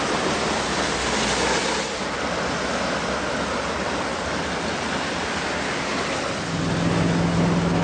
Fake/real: real